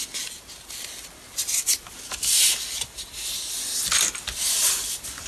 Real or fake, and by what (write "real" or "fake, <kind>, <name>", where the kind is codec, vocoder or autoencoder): real